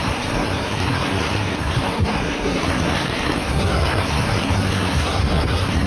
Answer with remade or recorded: remade